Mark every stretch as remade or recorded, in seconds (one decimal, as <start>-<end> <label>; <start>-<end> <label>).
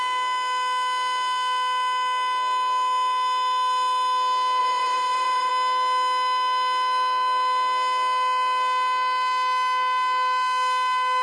0.0-4.6 recorded; 4.6-5.5 remade; 5.5-11.2 recorded